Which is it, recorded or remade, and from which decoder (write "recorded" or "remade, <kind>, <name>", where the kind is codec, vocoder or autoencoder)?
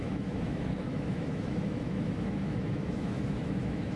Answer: remade, autoencoder, DAC-VAE